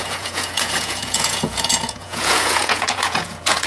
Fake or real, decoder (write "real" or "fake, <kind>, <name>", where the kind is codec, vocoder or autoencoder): fake, vocoder, Vocos